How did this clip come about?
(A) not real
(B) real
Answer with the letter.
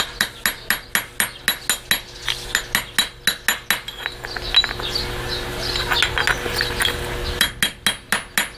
B